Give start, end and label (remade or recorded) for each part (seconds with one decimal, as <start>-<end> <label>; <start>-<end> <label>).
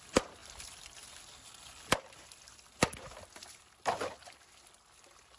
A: 0.0-5.4 recorded